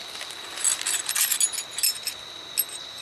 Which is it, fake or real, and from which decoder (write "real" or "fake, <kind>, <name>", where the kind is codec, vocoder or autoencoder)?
real